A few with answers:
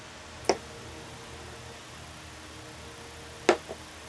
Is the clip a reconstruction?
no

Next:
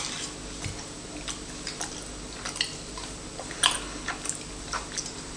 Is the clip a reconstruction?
no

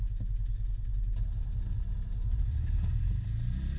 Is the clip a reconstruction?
no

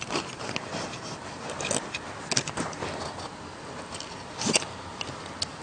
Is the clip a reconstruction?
no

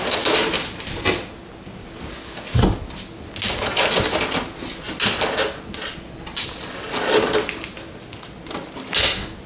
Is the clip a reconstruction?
no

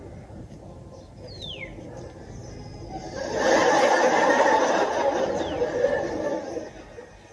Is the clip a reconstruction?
no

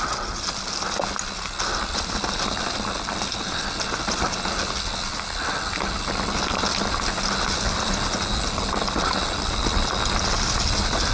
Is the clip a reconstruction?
no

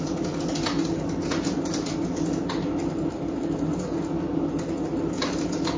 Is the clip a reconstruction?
no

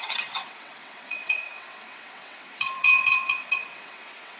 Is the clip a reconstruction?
yes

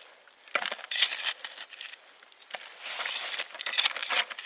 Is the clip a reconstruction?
no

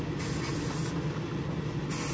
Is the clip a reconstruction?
no